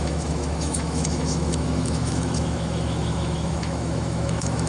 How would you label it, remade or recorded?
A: remade